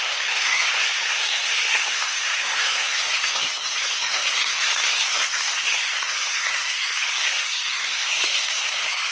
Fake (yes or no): yes